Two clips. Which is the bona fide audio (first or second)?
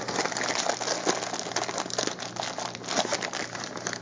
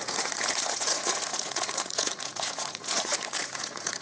first